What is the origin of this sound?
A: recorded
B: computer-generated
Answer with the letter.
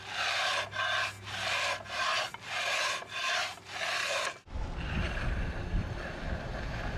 A